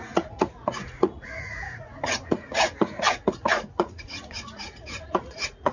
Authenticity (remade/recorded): remade